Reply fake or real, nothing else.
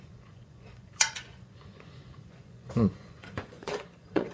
fake